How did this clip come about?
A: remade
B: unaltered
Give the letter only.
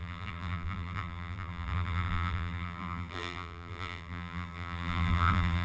A